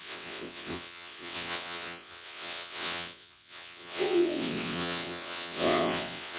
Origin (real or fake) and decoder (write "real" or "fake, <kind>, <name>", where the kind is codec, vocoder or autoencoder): fake, vocoder, WaveNeXt